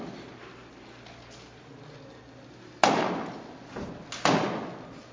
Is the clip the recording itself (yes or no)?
yes